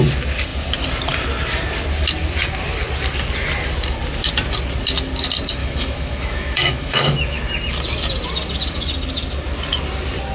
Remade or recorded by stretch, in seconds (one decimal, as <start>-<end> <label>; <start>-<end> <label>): 0.0-5.6 recorded; 5.6-7.4 remade; 7.4-10.3 recorded